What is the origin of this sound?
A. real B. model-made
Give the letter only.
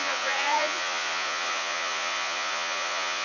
B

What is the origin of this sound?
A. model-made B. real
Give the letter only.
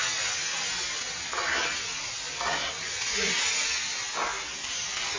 B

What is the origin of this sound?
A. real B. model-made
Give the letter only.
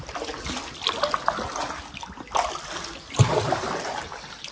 A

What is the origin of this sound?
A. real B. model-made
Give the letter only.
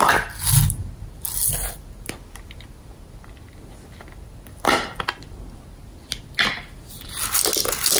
A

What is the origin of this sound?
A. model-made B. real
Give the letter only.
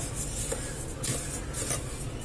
B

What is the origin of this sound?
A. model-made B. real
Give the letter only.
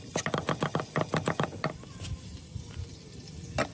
B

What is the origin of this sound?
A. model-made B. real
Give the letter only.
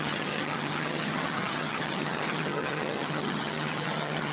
A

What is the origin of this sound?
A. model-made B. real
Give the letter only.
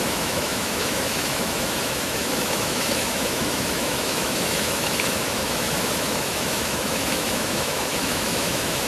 A